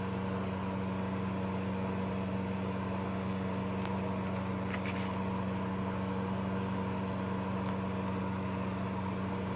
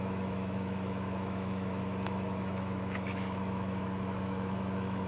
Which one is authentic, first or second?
first